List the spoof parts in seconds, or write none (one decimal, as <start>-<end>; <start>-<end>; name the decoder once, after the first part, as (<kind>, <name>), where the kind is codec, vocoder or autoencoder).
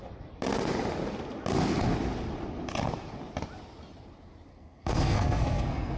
4.5-6.0 (codec, SNAC)